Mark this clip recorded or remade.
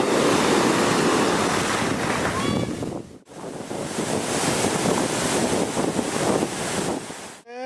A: recorded